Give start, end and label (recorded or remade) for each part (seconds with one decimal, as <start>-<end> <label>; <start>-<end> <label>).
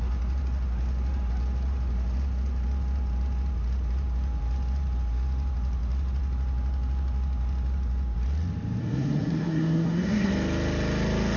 0.0-8.8 recorded; 8.8-10.3 remade; 10.3-11.4 recorded